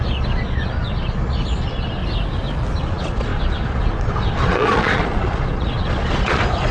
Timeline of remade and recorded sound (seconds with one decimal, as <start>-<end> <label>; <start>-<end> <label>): 0.0-2.0 remade; 2.0-2.8 recorded; 2.8-6.7 remade